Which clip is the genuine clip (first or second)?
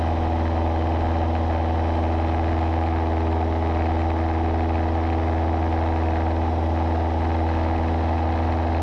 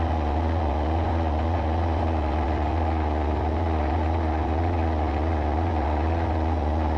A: first